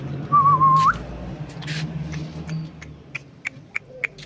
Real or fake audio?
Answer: real